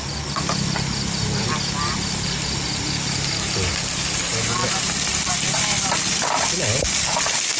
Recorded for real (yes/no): yes